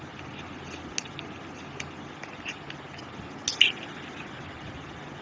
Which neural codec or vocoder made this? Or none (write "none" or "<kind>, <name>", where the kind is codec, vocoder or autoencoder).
none